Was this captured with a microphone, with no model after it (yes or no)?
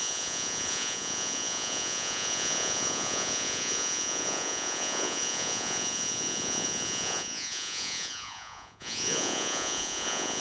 no